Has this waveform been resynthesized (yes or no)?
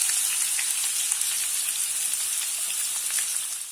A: no